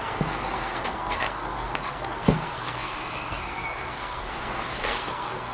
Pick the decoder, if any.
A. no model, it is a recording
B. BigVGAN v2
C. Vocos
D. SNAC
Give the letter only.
D